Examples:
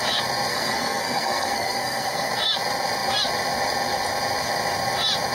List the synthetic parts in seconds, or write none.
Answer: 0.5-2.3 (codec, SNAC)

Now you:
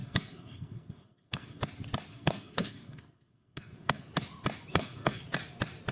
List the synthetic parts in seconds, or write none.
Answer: 0.0-1.6 (codec, SNAC); 2.1-4.0; 4.7-5.2

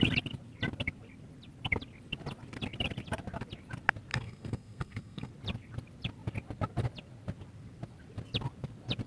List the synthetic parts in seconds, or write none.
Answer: 4.1-5.3 (codec, SNAC)

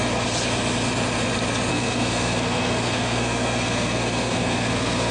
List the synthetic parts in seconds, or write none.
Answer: 1.7-5.1 (codec, SNAC)

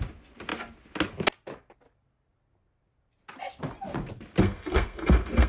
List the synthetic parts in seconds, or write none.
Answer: 4.4-5.5 (codec, SNAC)

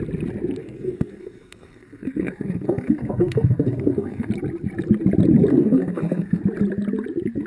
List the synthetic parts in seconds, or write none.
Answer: 0.6-4.3 (codec, SNAC); 5.5-6.4

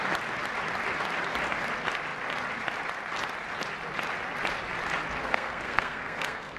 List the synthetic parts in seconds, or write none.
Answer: 5.2-6.6 (codec, SNAC)